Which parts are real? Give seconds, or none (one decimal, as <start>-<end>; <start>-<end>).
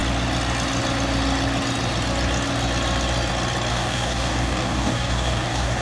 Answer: 0.0-3.7